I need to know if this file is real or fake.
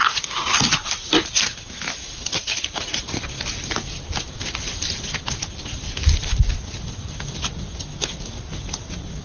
real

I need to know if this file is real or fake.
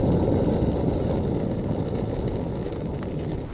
real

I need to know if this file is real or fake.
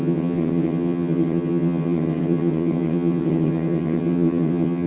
fake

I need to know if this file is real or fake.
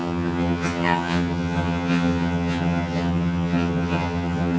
fake